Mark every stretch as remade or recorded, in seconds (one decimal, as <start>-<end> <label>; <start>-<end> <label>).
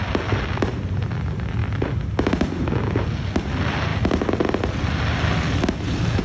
0.0-6.2 recorded